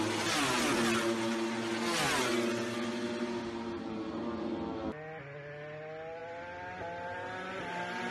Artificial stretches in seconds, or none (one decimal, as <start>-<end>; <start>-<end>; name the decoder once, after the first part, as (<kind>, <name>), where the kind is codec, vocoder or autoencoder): none